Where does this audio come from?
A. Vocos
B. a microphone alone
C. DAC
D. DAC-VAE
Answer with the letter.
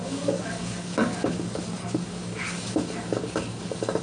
C